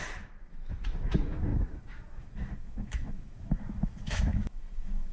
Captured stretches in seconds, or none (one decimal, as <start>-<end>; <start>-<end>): none